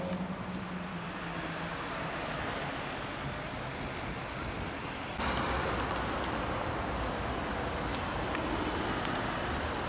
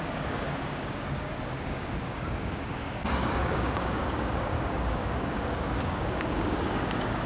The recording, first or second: first